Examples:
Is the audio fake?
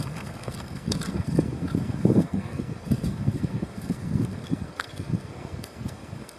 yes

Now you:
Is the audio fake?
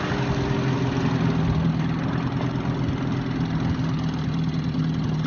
no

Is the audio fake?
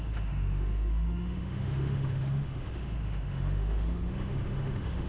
yes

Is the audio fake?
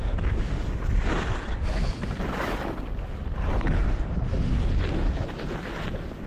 no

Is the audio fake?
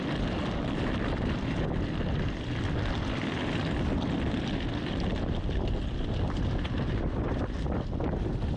no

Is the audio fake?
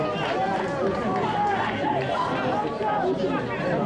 no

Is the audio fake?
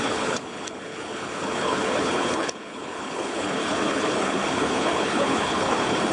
yes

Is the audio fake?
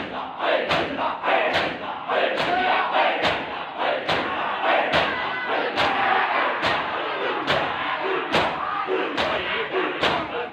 no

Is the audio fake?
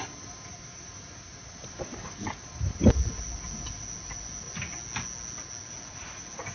no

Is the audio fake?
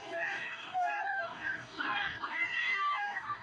yes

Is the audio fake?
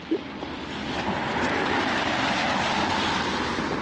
yes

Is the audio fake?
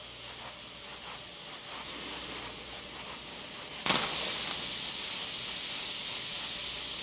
no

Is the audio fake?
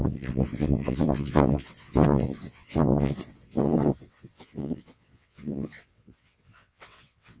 yes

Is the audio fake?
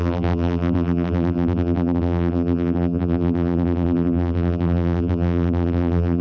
yes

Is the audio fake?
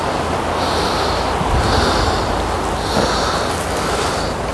no